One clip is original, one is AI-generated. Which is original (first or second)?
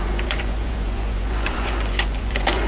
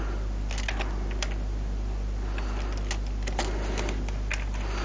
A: second